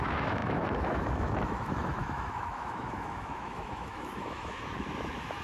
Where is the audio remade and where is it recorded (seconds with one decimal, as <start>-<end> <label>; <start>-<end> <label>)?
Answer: 0.0-5.4 remade